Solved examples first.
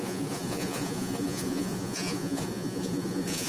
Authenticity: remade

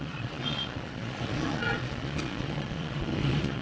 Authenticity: remade